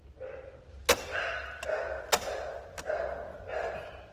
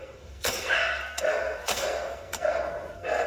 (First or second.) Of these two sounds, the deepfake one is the second